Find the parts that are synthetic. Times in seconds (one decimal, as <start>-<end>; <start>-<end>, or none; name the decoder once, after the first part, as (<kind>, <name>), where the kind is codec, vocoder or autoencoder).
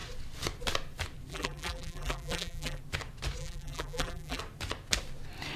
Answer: 1.3-2.8 (vocoder, BigVGAN v2); 3.4-4.4